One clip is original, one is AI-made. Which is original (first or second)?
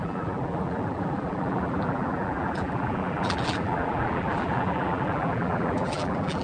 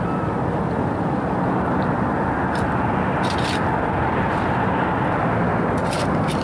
second